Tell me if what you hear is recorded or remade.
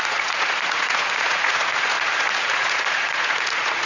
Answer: remade